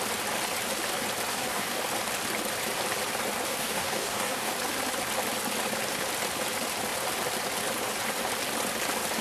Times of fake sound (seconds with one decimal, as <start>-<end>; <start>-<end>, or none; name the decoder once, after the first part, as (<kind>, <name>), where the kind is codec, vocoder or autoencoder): 1.3-1.8 (codec, DAC); 3.5-4.5